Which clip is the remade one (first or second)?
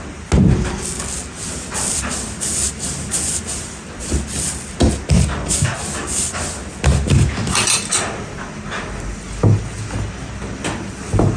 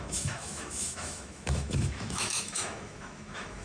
second